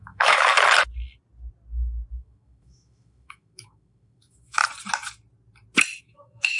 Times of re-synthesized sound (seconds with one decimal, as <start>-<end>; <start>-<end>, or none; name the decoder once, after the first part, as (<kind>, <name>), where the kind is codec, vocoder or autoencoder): 0.0-0.5 (autoencoder, DAC-VAE); 2.1-4.6; 6.0-6.6